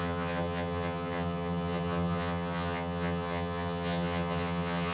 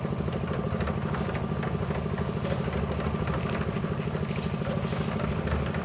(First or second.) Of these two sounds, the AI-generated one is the first